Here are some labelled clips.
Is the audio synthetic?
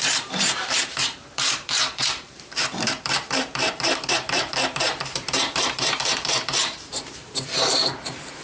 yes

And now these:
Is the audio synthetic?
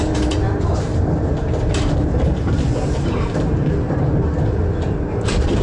yes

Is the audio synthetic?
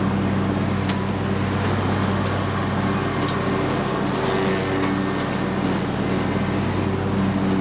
no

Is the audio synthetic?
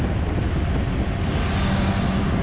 no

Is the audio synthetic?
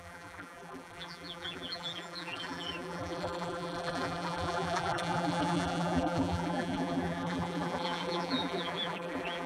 yes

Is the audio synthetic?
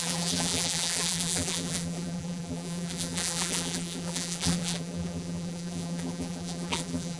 yes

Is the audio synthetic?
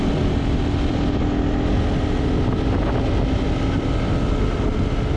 no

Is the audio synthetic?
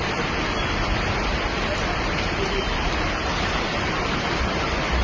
yes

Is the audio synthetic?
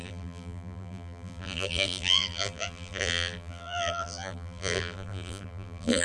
yes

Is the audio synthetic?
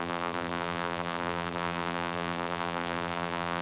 yes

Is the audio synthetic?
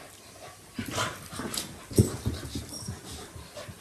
no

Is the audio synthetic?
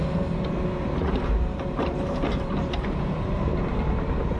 yes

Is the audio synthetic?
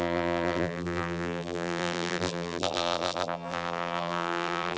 yes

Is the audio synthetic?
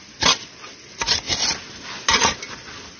no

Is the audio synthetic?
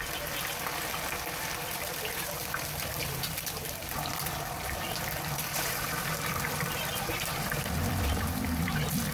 yes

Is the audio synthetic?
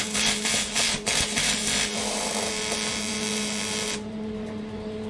yes